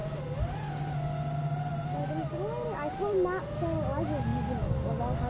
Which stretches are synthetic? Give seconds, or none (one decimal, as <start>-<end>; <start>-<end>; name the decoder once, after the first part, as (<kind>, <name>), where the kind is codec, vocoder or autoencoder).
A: none